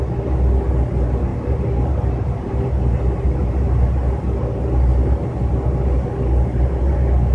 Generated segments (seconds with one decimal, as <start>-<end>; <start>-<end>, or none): none

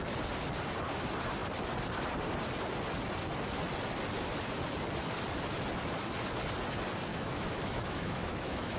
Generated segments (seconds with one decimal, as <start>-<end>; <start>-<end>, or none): 7.1-8.8

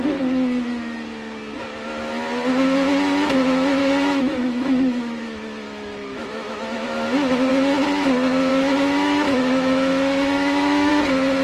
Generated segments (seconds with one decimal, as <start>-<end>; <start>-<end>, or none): 3.8-7.5; 8.5-10.9

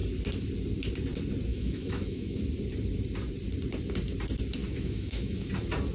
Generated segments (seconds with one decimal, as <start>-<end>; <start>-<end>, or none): 1.5-2.4; 4.6-5.5

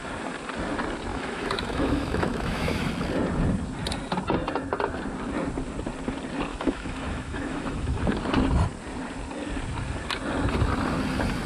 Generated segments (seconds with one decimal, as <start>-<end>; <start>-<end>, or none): 1.1-2.9; 6.5-8.0